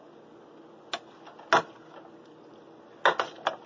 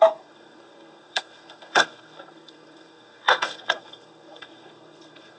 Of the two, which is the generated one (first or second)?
second